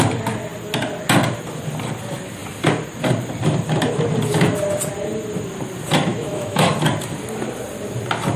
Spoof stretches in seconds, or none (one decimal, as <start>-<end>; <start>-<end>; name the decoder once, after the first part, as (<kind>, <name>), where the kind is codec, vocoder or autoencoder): 6.1-6.7 (autoencoder, DAC-VAE)